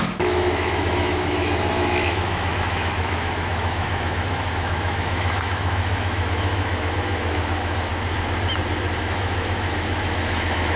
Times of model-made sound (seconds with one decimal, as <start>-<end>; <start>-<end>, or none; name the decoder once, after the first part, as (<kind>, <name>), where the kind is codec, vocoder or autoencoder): 0.0-7.9 (autoencoder, DAC-VAE); 9.0-10.8